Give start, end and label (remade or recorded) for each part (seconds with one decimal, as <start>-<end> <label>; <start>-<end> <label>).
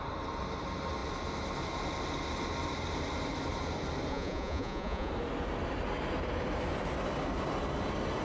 0.0-4.1 recorded; 4.1-5.1 remade; 5.1-8.2 recorded